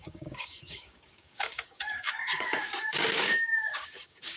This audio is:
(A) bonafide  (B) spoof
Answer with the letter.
B